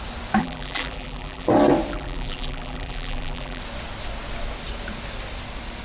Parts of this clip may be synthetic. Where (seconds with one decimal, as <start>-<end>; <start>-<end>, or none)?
0.4-1.5; 1.9-3.6